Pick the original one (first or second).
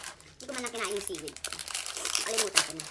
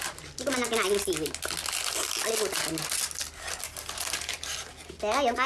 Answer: second